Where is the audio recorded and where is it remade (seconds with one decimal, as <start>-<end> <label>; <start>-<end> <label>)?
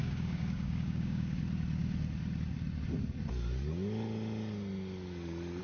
0.0-1.4 remade; 1.4-5.6 recorded